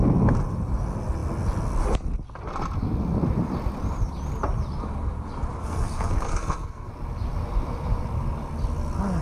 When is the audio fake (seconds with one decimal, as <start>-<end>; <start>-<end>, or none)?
5.6-6.9